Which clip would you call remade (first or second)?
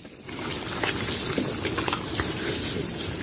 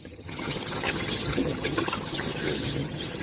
second